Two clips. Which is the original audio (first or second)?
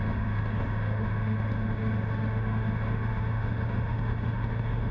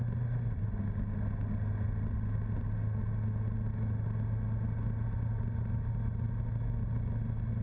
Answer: second